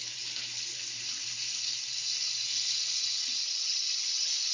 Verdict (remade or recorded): recorded